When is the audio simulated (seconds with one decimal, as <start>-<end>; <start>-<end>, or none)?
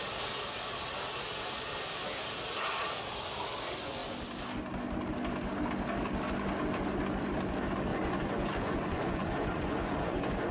7.9-10.5